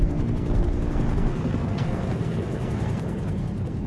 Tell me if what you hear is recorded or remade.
remade